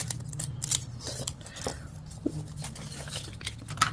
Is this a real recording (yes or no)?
yes